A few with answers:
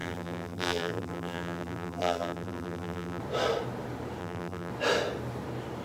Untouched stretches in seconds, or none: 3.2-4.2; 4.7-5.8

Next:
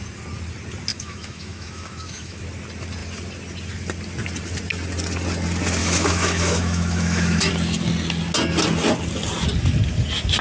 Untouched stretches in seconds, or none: 0.0-0.9; 2.4-5.8; 7.5-10.4

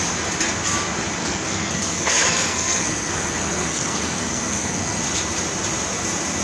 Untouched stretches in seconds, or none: 0.0-1.2; 5.0-6.4

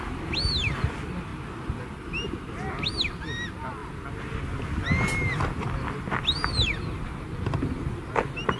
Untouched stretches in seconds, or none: 0.0-8.6